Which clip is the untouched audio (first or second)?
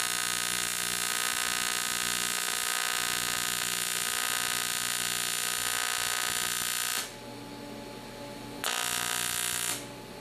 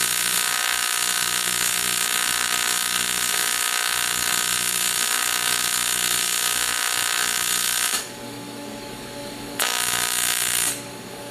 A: first